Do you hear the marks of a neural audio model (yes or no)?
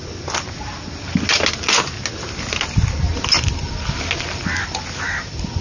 no